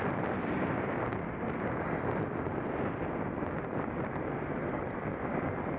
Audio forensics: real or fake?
real